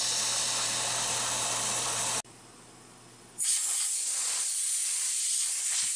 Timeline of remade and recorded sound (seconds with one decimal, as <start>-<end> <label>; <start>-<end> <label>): 0.0-4.8 recorded; 4.8-5.5 remade; 5.5-6.0 recorded